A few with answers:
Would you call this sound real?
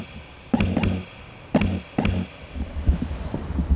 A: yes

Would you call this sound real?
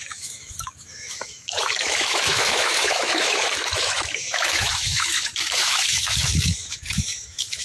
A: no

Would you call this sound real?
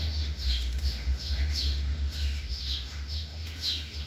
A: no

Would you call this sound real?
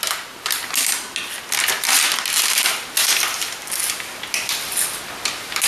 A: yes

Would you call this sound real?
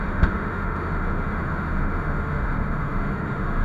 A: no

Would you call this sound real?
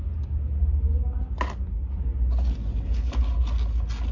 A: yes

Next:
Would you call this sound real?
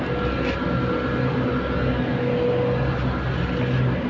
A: yes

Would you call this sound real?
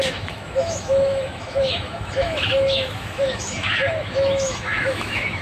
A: no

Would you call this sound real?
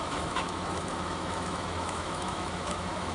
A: no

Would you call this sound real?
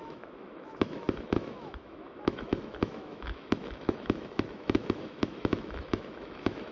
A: no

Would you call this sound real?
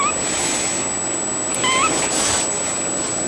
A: yes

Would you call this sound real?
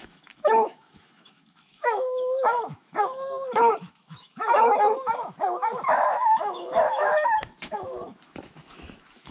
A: no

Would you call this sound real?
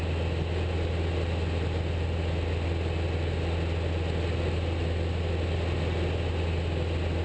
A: yes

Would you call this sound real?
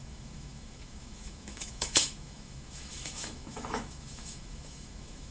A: no